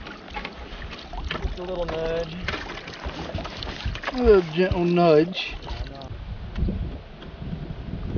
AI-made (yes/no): no